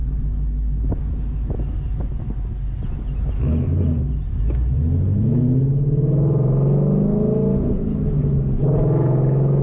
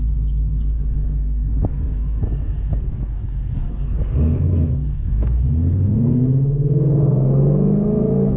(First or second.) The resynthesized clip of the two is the second